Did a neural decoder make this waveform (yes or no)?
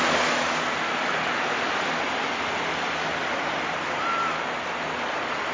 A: no